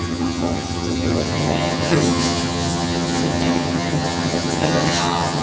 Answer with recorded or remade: remade